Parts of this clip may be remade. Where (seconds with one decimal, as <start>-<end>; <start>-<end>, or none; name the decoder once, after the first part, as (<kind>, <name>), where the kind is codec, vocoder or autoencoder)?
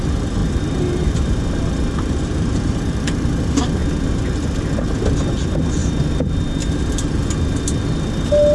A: 0.0-3.8 (vocoder, BigVGAN v2); 5.3-5.8; 6.7-7.2; 8.1-8.5